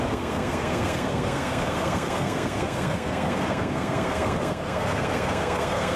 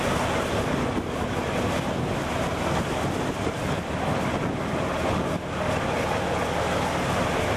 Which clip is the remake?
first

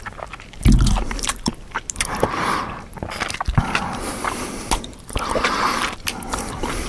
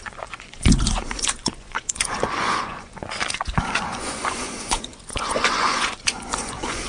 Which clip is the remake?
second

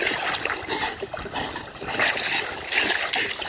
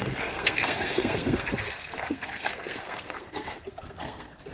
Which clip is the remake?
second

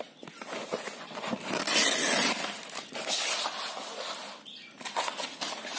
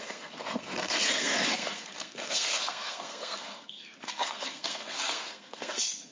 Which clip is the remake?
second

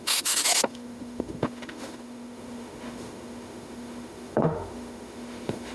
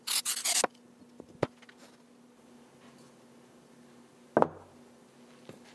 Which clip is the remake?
first